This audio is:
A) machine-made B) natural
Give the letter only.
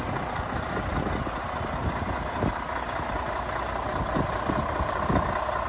B